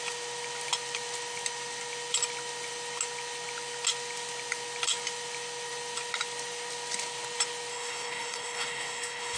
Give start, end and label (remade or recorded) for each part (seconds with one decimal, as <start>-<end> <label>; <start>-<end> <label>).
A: 0.0-7.7 recorded; 7.7-9.4 remade